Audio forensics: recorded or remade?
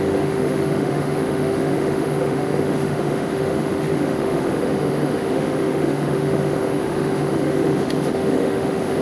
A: remade